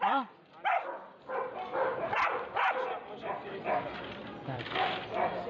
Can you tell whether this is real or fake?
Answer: fake